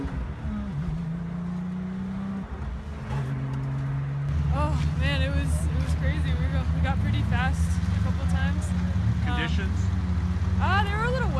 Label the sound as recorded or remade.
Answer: recorded